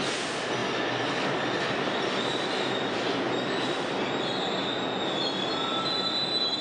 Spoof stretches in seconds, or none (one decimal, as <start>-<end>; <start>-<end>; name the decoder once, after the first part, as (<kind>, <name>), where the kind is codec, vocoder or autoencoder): none